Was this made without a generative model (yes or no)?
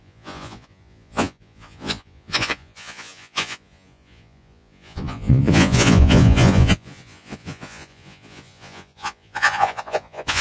no